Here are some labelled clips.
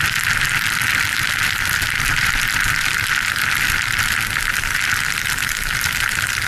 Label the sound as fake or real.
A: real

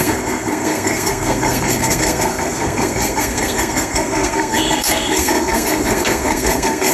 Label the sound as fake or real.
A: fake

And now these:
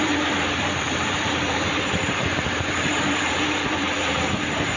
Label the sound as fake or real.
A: fake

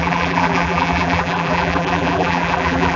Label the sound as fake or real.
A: fake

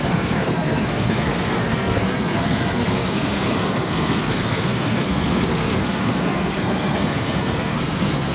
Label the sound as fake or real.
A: fake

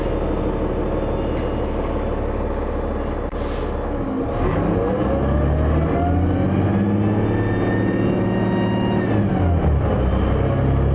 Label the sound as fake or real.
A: real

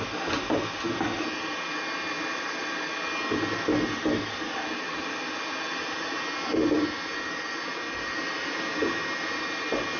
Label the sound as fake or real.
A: real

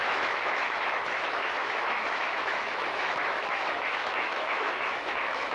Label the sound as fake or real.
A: fake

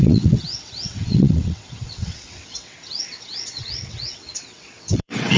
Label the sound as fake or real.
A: fake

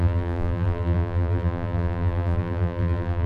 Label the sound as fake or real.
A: fake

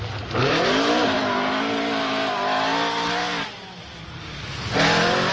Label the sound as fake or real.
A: real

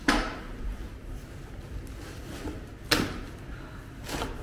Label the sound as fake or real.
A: real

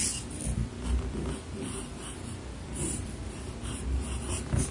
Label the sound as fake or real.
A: real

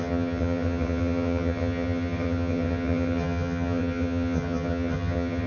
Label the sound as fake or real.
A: fake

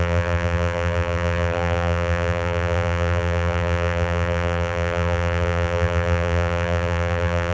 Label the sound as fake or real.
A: fake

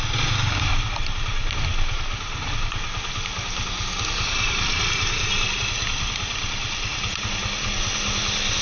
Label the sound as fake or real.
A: real